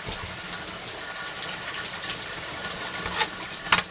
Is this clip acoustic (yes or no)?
yes